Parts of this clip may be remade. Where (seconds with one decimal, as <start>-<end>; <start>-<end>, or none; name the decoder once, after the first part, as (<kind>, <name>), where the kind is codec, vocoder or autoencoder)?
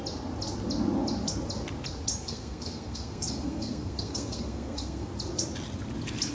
2.1-5.1 (codec, SNAC)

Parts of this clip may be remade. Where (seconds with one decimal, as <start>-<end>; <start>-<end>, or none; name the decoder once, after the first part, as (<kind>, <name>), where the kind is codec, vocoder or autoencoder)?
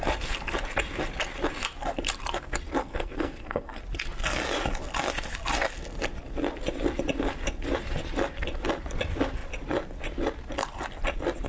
2.8-3.8 (codec, SNAC)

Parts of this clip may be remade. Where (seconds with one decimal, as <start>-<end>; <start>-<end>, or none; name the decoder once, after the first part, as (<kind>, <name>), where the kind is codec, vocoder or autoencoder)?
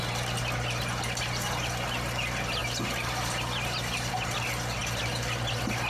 none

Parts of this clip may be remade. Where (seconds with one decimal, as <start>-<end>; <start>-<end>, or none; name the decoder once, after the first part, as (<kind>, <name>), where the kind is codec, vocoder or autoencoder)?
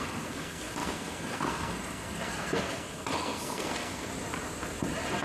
0.0-4.1 (codec, SNAC)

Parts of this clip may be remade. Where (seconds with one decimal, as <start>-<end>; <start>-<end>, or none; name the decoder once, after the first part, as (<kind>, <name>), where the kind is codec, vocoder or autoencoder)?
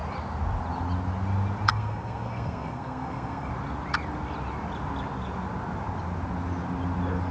1.7-3.5 (codec, SNAC)